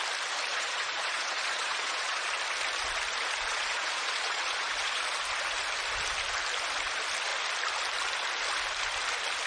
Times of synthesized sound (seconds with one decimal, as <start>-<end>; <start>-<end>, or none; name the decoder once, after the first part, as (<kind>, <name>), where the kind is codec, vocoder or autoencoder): 0.5-2.3 (vocoder, Vocos); 3.5-5.2